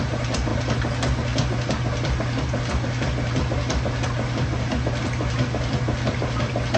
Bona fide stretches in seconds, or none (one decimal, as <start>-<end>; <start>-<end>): 0.0-6.8